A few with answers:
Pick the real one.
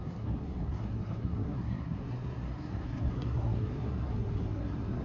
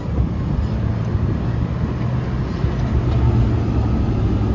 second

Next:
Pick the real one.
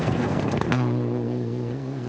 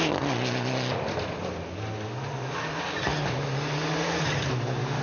second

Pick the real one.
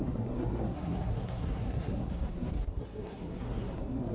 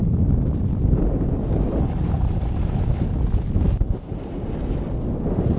second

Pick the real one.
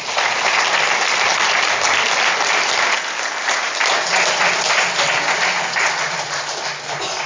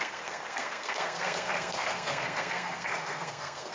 first